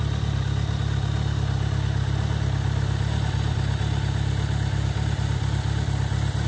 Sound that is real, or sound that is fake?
real